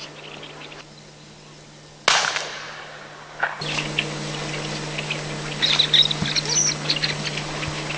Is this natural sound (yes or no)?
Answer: yes